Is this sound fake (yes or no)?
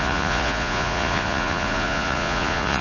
yes